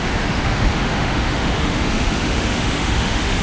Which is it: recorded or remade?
remade